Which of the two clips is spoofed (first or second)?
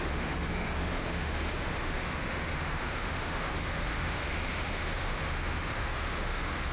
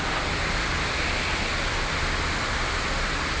first